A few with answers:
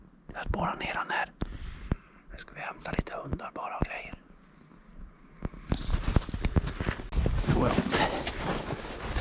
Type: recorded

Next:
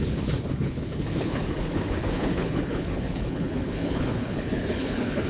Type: remade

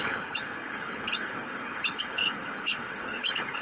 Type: remade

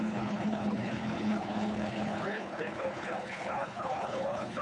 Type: remade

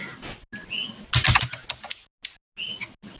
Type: recorded